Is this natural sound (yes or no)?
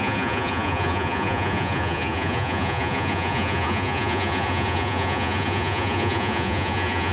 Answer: no